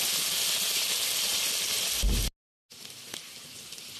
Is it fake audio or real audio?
real